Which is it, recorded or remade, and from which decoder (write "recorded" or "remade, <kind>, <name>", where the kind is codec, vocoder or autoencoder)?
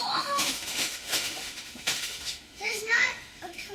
remade, autoencoder, DAC-VAE